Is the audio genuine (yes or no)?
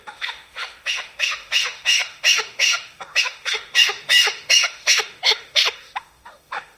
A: no